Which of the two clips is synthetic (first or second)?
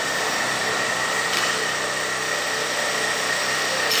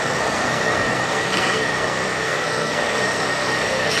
second